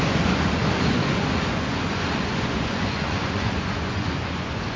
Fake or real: fake